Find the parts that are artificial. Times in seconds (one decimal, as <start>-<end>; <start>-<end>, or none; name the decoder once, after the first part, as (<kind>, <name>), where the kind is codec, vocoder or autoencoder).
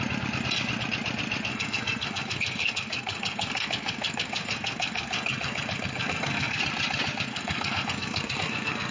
1.5-6.6 (codec, SNAC); 7.3-8.9